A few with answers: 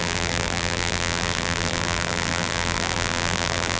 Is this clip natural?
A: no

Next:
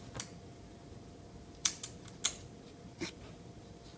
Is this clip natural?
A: yes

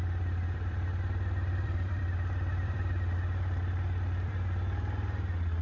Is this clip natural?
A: no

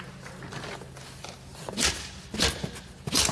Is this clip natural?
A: yes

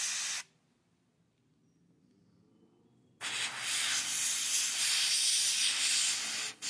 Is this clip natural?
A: yes